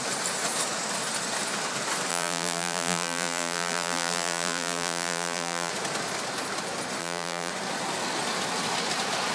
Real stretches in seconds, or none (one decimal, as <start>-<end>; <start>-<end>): 0.0-2.1; 5.7-7.0; 7.5-9.3